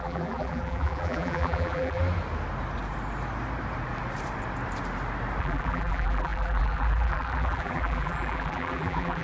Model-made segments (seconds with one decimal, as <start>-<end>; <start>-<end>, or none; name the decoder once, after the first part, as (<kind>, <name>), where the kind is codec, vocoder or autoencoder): 0.0-2.0 (vocoder, BigVGAN v2); 5.4-9.2

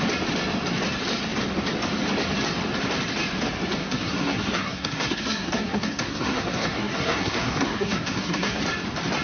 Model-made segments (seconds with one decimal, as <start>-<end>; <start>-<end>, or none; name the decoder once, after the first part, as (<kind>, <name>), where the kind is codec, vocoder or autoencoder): 3.8-8.6 (codec, SNAC)